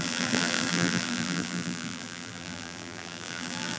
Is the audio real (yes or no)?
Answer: no